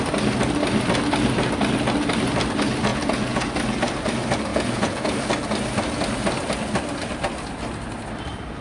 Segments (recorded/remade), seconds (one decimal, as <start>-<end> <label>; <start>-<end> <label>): 0.0-2.9 recorded; 2.9-3.5 remade; 3.5-4.5 recorded; 4.5-5.3 remade; 5.3-8.6 recorded